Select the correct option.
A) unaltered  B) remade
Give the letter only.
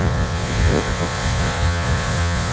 B